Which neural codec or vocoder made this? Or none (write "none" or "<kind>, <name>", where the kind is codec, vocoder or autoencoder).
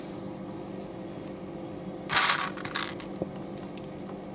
none